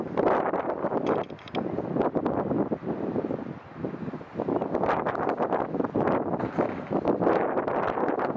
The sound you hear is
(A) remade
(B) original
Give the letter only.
B